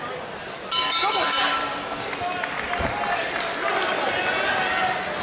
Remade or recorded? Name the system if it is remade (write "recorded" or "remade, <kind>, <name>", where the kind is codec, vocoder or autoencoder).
recorded